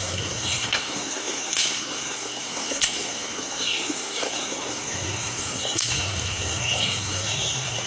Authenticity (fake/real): fake